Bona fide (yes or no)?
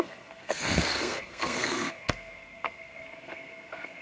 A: no